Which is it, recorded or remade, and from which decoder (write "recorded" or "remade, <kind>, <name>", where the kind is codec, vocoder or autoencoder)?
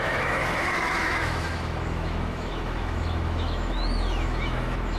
remade, autoencoder, DAC-VAE